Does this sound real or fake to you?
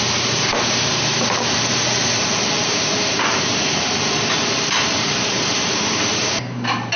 fake